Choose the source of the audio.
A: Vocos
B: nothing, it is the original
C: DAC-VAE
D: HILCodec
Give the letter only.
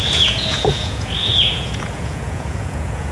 A